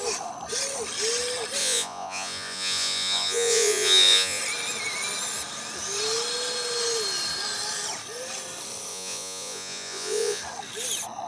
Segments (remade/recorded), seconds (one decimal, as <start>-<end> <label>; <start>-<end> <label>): 0.0-1.6 recorded; 1.6-4.4 remade; 4.4-8.9 recorded; 8.9-10.4 remade; 10.4-11.3 recorded